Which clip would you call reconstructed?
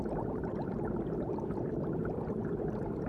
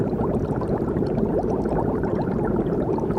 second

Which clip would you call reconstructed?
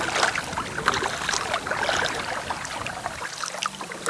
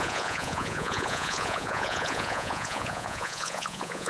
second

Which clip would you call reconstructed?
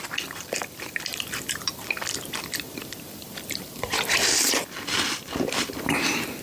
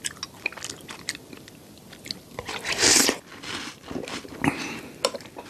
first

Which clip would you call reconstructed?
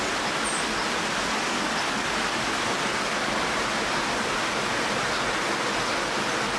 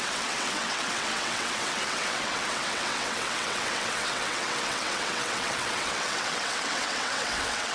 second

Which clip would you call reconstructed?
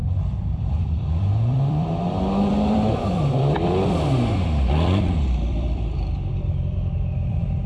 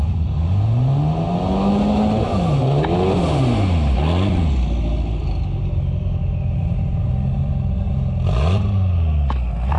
first